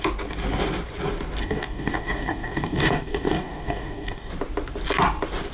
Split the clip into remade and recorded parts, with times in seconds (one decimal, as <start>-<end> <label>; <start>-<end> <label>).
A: 0.0-1.4 recorded; 1.4-4.3 remade; 4.3-5.5 recorded